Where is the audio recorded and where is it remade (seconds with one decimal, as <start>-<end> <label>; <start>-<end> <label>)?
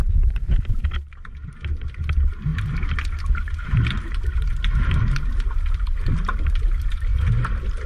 0.0-7.9 recorded